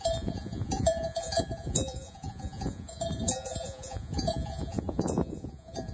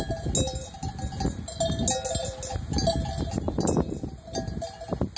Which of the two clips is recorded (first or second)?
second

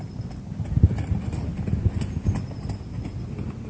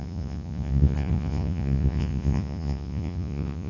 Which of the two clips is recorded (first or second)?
first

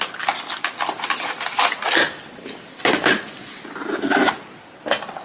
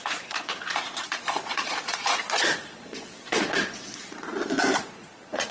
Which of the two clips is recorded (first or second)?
first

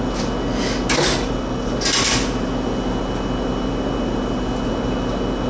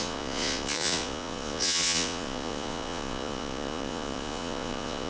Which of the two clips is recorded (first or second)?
first